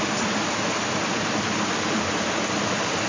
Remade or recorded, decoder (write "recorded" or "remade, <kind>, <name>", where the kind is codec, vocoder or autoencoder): recorded